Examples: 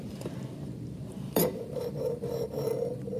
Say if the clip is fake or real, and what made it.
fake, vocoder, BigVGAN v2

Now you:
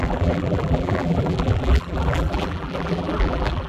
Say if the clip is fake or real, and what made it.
fake, vocoder, BigVGAN v2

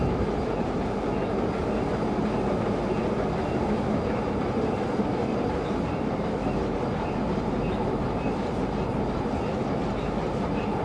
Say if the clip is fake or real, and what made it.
fake, vocoder, BigVGAN v2